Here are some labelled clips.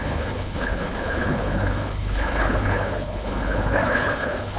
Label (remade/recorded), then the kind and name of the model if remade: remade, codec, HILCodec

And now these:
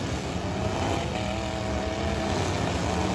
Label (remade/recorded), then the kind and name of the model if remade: recorded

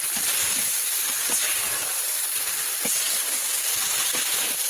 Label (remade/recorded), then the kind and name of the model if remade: recorded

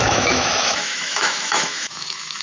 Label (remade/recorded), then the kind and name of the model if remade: remade, autoencoder, DAC-VAE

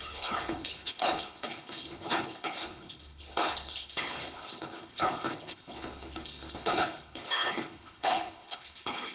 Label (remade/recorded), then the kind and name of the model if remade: remade, codec, HILCodec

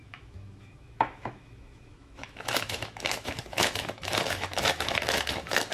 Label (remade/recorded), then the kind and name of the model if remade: remade, autoencoder, DAC-VAE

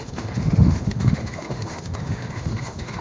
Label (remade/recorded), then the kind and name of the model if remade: remade, autoencoder, DAC-VAE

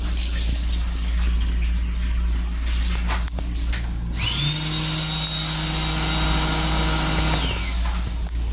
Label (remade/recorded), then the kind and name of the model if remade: recorded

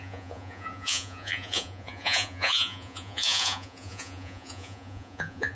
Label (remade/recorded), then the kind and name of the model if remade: remade, vocoder, Vocos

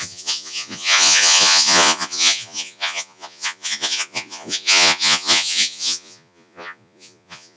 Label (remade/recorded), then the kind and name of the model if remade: remade, vocoder, Vocos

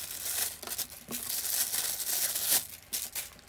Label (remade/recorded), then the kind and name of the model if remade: recorded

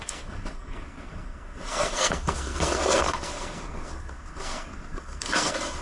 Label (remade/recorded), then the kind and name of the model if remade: remade, codec, SNAC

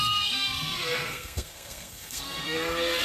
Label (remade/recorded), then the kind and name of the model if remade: remade, codec, SNAC